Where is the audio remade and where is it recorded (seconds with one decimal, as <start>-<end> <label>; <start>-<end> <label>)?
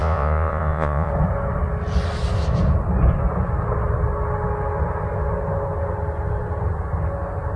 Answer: 0.0-1.1 remade; 1.1-7.6 recorded